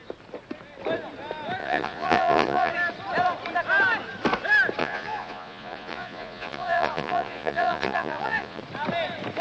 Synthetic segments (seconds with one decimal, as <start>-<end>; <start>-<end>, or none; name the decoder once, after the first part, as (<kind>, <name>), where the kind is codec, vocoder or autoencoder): 1.6-2.7 (vocoder, Vocos); 4.8-8.6